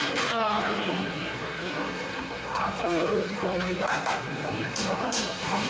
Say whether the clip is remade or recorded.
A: remade